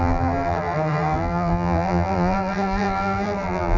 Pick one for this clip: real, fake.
fake